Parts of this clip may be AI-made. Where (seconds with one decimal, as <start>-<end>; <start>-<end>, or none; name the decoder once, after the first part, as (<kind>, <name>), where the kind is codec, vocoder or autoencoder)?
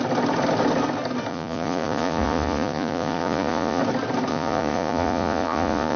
1.3-3.8 (vocoder, Vocos); 4.3-6.0